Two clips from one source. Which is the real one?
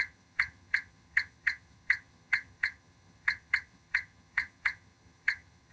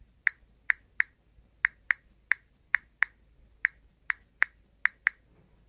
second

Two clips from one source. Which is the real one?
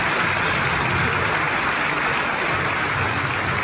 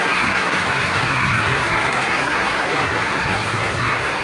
first